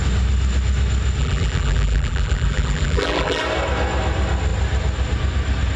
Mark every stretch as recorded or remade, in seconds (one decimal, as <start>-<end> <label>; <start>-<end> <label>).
0.0-1.2 recorded; 1.2-3.4 remade; 3.4-5.8 recorded